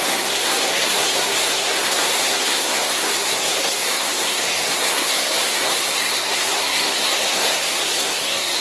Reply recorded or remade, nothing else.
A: remade